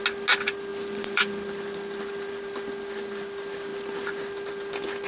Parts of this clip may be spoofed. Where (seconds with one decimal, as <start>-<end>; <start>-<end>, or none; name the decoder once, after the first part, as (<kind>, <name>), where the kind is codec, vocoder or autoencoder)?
0.7-2.7 (vocoder, BigVGAN v2)